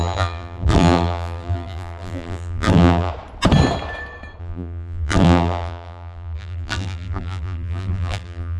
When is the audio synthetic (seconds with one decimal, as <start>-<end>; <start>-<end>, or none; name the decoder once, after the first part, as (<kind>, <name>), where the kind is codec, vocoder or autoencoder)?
0.0-3.1 (vocoder, BigVGAN v2); 4.4-8.6